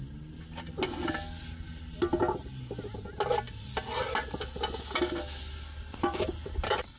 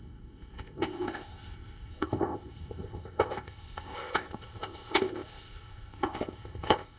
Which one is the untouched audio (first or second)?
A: first